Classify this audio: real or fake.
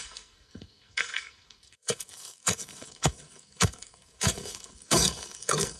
fake